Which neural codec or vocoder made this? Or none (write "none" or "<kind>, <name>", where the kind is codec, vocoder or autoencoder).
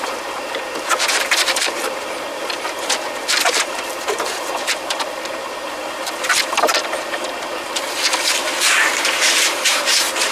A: vocoder, BigVGAN v2